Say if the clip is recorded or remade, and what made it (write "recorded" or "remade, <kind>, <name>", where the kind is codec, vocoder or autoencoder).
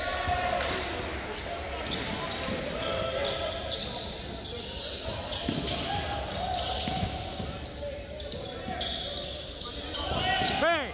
recorded